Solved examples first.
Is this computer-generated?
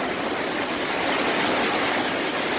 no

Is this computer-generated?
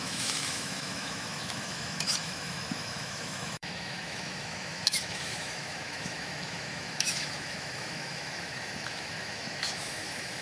yes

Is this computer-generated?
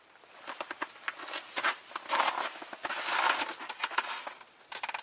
no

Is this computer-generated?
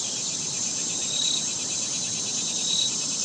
yes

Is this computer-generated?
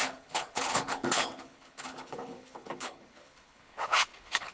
yes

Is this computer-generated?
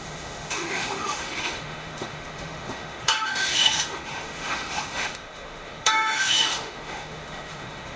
yes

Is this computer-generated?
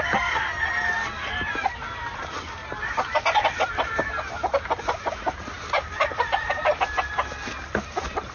no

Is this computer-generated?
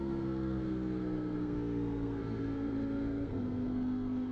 yes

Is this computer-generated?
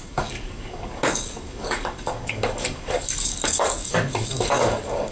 yes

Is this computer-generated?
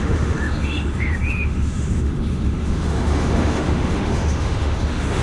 yes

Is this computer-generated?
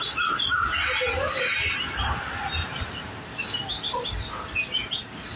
no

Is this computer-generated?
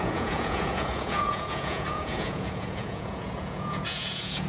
yes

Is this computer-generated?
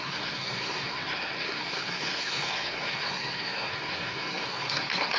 yes